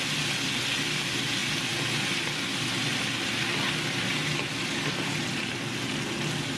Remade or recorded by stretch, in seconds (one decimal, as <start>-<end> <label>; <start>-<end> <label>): 0.0-6.6 recorded